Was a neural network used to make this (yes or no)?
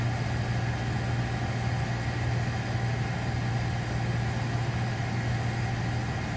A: no